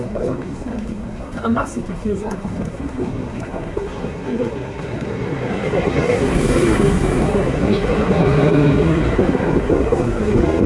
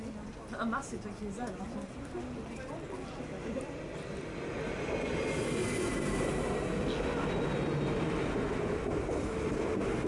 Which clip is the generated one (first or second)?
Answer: first